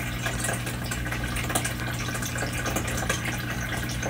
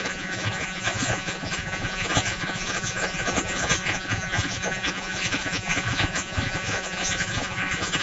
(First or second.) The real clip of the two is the first